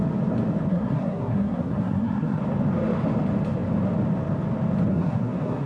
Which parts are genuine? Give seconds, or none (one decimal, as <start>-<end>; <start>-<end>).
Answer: 0.0-0.7; 2.4-4.9